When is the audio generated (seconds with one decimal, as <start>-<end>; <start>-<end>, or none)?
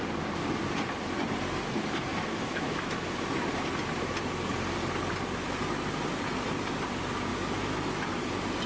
2.1-3.0; 7.3-7.9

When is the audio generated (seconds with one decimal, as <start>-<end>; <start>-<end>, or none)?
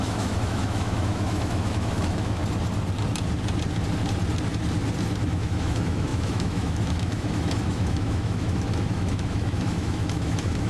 0.0-2.4; 5.3-10.7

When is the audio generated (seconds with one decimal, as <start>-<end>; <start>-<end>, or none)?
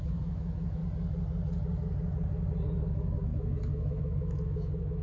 0.0-0.8; 2.8-5.0